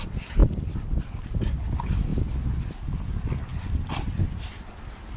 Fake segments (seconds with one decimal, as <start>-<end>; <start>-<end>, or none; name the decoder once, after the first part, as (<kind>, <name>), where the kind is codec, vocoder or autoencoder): 0.4-1.6 (vocoder, BigVGAN v2); 3.5-4.7